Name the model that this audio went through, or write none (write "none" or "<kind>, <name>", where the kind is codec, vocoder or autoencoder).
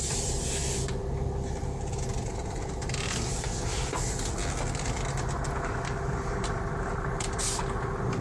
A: none